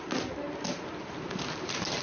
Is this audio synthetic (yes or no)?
no